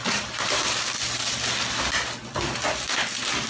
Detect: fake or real real